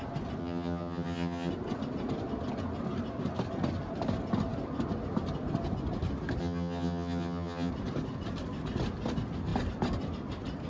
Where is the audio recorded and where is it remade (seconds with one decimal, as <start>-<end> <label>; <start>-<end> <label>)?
0.0-0.4 recorded; 0.4-1.5 remade; 1.5-6.4 recorded; 6.4-7.7 remade; 7.7-10.7 recorded